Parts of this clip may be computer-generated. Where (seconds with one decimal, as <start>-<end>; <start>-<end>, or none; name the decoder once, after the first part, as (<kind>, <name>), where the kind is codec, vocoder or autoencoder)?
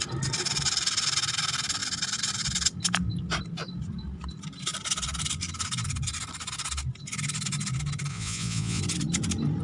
8.1-8.8 (vocoder, Vocos)